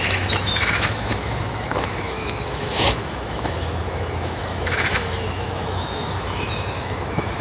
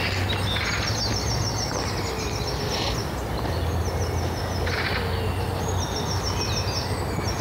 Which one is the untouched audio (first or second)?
second